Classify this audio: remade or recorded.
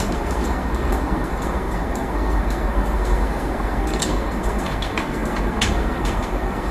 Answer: remade